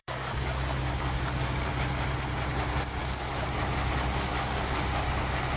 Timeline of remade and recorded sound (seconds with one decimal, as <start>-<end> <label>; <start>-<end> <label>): 0.0-1.7 remade; 1.7-3.0 recorded; 3.0-3.6 remade; 3.6-5.6 recorded